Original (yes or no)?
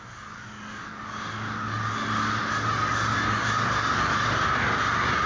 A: yes